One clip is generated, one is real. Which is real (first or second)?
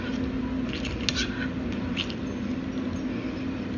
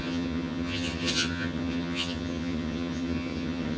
first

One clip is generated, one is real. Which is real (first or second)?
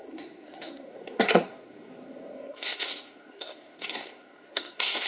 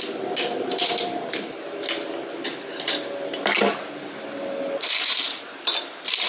second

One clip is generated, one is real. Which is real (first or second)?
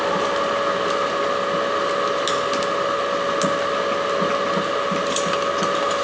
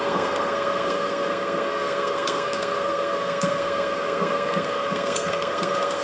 first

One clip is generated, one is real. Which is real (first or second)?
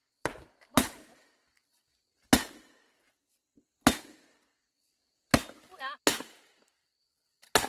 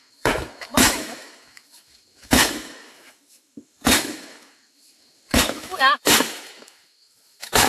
first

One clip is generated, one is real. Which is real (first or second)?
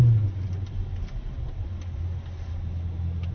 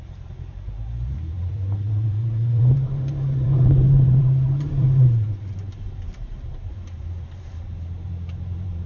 first